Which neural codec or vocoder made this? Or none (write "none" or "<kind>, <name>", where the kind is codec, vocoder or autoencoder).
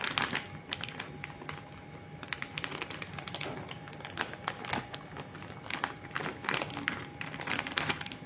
none